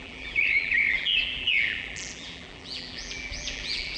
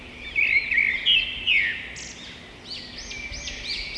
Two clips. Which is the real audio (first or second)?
second